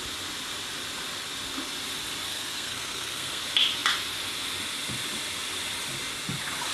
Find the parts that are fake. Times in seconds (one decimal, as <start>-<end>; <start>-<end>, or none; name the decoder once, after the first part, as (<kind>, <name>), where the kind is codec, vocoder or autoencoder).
2.3-3.4 (codec, SNAC)